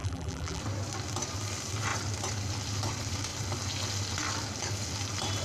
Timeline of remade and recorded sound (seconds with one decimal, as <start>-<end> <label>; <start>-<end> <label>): 0.0-0.6 remade; 0.6-5.4 recorded